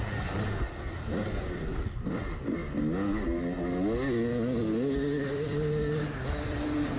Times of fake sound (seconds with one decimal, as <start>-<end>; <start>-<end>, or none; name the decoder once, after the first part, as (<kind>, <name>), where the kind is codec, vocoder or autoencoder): 0.0-2.6 (vocoder, BigVGAN v2); 5.3-7.0